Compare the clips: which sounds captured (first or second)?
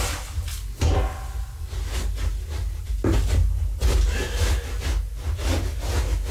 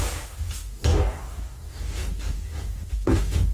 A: first